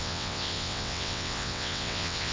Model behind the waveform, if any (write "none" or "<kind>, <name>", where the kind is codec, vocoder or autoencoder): vocoder, WaveNeXt